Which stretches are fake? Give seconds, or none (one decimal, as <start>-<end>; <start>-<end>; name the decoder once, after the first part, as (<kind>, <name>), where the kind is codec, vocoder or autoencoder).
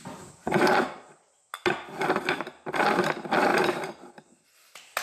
3.5-4.1 (vocoder, BigVGAN v2)